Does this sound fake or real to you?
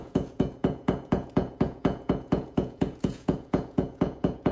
fake